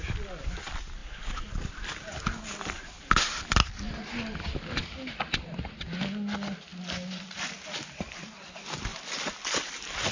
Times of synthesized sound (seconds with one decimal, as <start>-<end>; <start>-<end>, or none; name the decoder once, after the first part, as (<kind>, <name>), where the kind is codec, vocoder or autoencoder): none